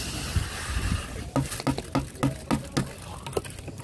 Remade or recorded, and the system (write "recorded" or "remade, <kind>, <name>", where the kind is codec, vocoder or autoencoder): recorded